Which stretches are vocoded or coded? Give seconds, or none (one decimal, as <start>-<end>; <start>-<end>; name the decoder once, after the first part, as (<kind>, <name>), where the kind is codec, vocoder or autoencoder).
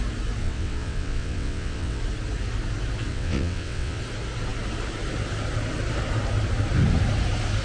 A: 0.4-2.0 (vocoder, WaveNeXt); 3.1-4.0